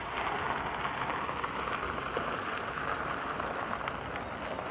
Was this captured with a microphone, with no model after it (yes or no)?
yes